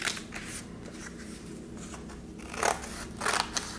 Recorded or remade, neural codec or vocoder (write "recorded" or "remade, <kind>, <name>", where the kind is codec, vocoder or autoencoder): recorded